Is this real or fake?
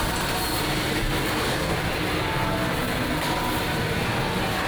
real